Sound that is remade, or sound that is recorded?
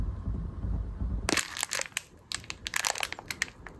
recorded